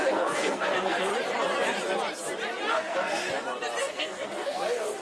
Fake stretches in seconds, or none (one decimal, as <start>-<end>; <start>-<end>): 0.0-1.1; 2.7-3.2; 3.8-5.0